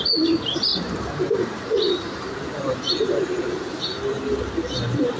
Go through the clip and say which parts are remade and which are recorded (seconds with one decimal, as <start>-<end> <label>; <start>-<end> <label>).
0.0-0.7 recorded; 0.7-3.8 remade; 3.8-5.2 recorded